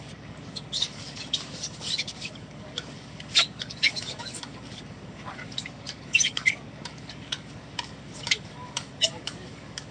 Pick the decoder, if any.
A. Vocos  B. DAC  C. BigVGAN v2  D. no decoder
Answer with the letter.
B